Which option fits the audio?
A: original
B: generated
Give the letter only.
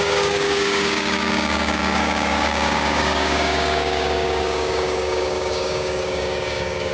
B